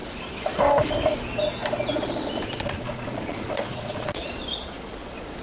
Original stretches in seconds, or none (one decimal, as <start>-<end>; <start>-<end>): 0.0-2.4